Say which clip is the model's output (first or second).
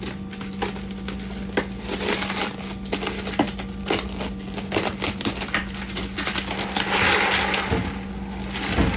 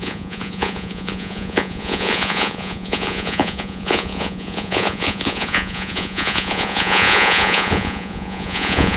second